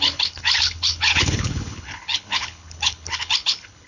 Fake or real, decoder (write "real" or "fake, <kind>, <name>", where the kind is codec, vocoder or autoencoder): fake, codec, HILCodec